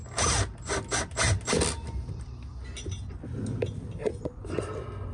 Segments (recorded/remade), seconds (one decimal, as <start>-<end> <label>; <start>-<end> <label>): 0.0-4.0 recorded; 4.0-4.6 remade; 4.6-5.1 recorded